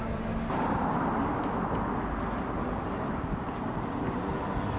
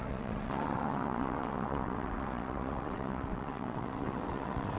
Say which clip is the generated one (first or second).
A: second